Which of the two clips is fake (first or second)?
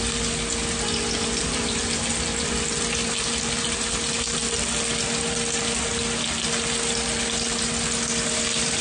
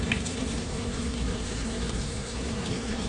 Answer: second